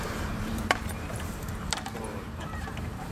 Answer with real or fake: fake